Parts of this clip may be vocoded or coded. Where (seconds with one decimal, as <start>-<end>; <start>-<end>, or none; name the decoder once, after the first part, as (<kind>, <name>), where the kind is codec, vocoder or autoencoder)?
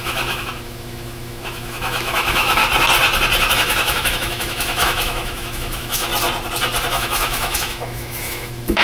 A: 0.0-2.6 (autoencoder, DAC-VAE); 3.5-6.1; 6.9-8.8